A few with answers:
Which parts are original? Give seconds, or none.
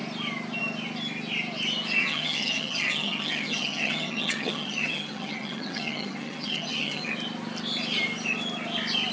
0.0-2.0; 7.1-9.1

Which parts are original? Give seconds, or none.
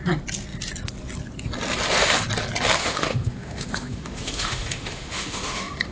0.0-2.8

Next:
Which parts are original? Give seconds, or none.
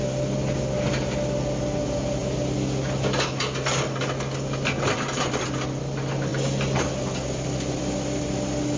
0.0-8.8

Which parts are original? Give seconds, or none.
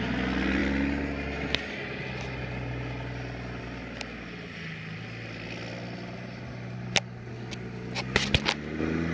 0.0-9.1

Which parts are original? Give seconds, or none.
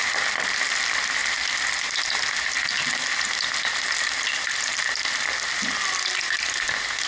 0.0-7.1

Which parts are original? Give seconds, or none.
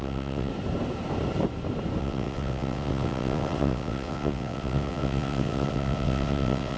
0.5-2.0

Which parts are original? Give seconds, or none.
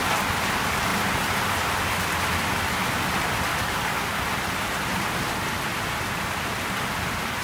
0.0-3.5; 4.2-7.4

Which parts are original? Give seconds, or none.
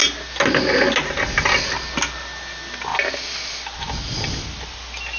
0.0-5.2